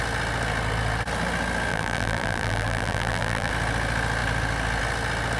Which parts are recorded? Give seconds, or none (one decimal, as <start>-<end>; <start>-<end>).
0.0-1.7; 3.5-5.4